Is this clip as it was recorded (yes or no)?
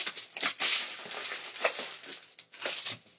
yes